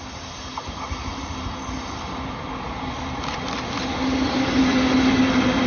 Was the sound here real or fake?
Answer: real